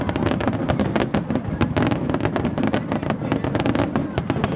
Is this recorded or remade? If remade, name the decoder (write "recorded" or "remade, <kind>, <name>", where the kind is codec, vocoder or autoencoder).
recorded